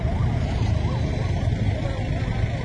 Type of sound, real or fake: real